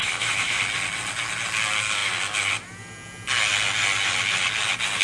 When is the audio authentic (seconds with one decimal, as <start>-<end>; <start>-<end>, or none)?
0.6-5.0